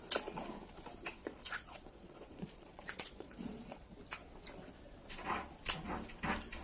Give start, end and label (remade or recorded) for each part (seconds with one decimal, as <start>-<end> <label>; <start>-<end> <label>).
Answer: 0.0-1.1 recorded; 1.1-4.0 remade; 4.0-6.6 recorded